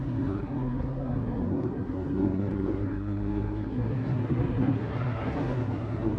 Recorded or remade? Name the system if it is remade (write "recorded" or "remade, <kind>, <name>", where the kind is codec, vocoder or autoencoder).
remade, codec, SNAC